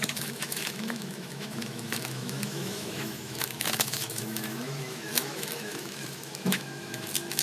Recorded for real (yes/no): no